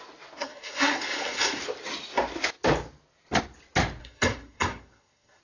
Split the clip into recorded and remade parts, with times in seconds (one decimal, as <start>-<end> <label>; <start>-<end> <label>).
0.0-0.4 recorded; 0.4-1.6 remade; 1.6-4.0 recorded; 4.0-5.4 remade